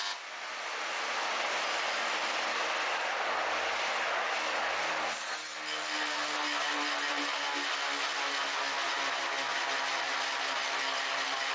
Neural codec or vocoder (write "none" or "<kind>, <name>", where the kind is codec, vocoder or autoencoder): none